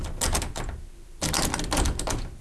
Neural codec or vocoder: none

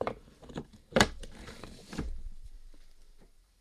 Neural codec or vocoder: vocoder, BigVGAN v2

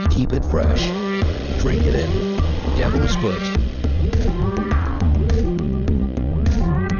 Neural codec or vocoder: vocoder, Vocos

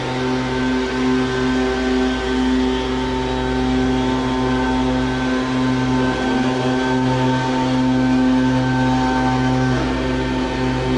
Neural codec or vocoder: none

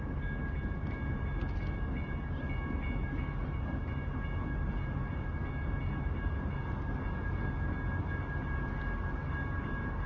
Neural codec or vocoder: none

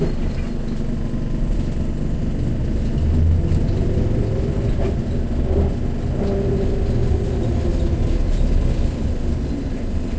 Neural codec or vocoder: none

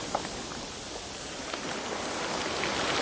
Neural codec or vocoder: none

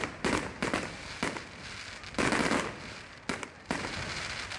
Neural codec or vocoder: none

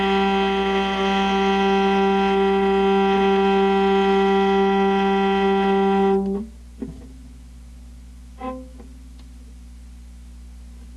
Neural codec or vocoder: none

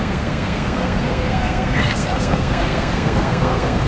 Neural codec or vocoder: codec, SNAC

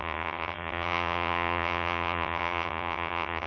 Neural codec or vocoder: vocoder, HiFi-GAN